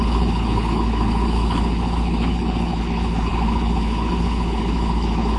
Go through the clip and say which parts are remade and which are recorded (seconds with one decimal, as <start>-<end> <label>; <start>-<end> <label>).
0.0-5.4 remade